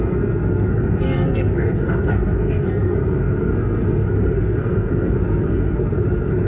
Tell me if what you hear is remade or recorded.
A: remade